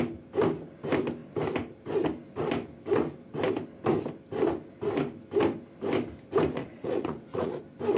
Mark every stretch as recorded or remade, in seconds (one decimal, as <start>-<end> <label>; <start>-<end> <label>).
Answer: 0.0-6.6 recorded; 6.6-7.6 remade; 7.6-8.0 recorded